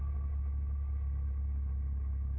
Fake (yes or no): no